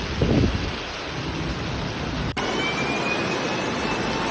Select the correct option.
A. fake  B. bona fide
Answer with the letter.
B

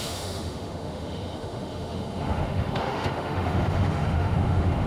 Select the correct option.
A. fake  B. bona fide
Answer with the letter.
A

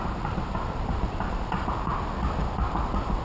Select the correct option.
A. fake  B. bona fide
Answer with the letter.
B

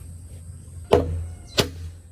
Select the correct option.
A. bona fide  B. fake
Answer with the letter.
A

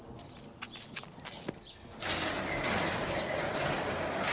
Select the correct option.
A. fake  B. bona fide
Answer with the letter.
B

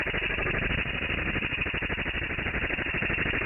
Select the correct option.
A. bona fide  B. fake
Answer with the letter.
A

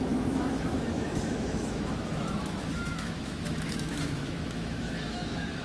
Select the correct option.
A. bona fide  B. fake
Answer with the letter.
B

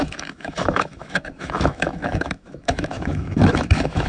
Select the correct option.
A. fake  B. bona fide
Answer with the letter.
A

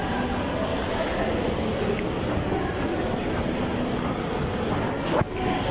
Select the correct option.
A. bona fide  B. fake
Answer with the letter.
A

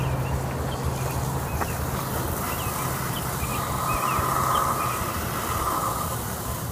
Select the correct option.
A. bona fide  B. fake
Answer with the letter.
A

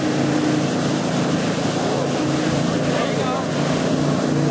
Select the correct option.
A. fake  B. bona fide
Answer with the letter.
B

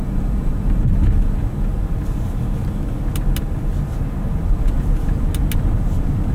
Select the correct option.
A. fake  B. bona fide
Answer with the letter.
B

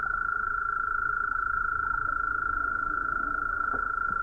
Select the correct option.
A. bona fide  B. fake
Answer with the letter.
B